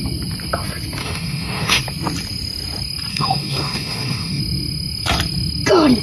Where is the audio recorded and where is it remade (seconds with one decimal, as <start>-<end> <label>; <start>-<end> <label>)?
0.0-1.0 recorded; 1.0-1.8 remade; 1.8-3.1 recorded; 3.1-4.4 remade; 4.4-6.0 recorded